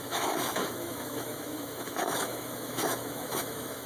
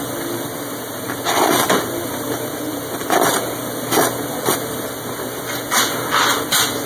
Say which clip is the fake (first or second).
first